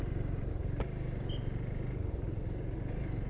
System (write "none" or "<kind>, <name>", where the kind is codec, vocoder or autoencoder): none